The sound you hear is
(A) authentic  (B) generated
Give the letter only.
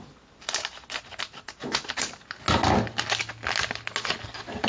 A